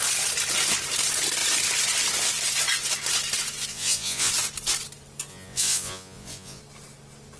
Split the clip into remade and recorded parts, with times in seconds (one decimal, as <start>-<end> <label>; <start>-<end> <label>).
0.0-3.7 recorded; 3.7-4.3 remade; 4.3-5.3 recorded; 5.3-6.6 remade; 6.6-7.4 recorded